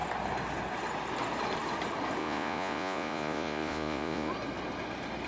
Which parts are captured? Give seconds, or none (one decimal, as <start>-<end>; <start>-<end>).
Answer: 0.0-2.2; 4.3-5.3